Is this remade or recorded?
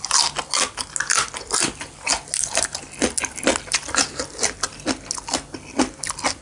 recorded